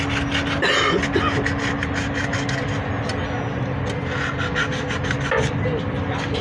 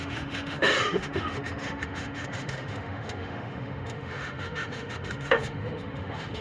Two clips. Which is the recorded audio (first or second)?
first